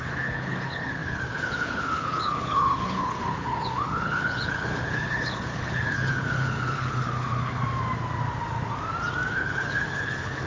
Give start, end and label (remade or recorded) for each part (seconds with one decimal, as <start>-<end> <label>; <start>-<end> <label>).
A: 0.0-7.6 remade; 7.6-9.3 recorded; 9.3-10.5 remade